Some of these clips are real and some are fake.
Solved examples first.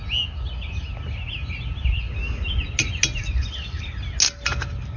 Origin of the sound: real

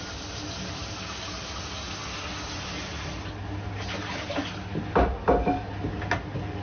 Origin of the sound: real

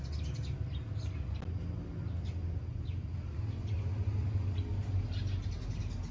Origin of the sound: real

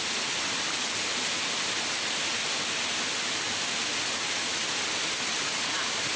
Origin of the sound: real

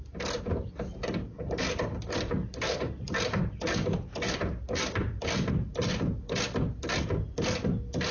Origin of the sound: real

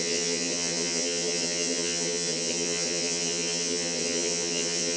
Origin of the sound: fake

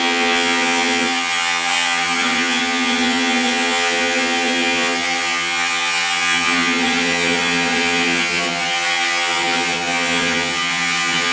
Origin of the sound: fake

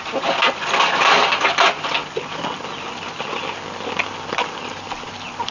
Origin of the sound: real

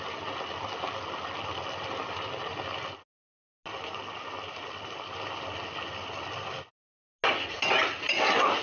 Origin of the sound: real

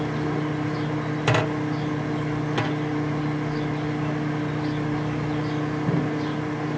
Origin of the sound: real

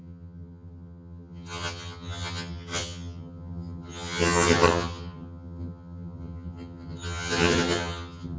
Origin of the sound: fake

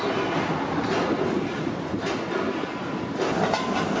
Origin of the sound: real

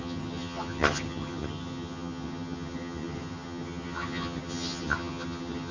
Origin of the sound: fake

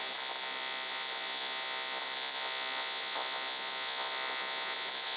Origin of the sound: real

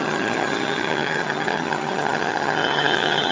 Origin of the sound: fake